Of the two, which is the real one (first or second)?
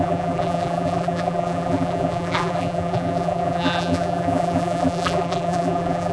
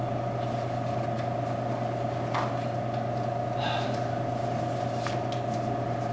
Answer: second